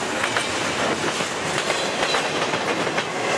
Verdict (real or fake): real